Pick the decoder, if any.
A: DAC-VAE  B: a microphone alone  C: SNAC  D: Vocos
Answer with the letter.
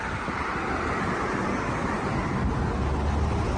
B